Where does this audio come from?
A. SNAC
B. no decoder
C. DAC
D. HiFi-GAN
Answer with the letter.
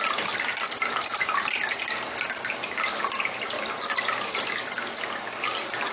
B